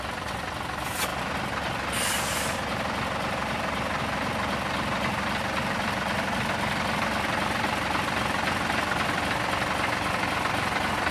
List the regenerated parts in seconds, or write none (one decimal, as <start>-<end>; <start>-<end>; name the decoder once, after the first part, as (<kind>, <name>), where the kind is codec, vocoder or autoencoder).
none